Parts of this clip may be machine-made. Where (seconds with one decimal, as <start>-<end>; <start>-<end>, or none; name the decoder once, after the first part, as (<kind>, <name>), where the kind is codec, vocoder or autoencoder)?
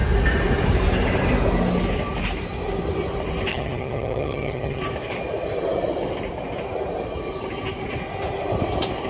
3.5-4.8 (vocoder, HiFi-GAN)